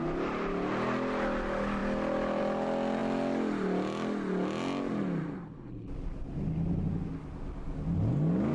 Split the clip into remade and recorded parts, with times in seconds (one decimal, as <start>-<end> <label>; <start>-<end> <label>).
0.0-8.5 recorded